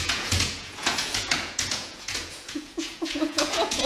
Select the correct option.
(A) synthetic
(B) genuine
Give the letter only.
A